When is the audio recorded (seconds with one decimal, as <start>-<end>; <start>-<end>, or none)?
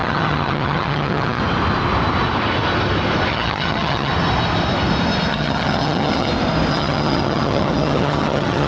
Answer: 1.4-3.3; 4.1-5.3; 6.3-6.7